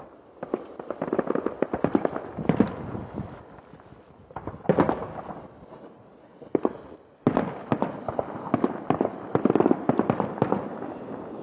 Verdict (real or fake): real